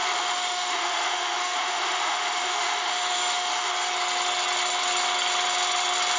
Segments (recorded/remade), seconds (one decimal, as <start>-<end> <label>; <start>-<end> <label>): 0.0-3.7 remade; 3.7-6.2 recorded